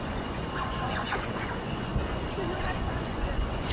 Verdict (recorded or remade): remade